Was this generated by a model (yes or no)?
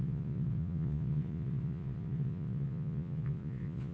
yes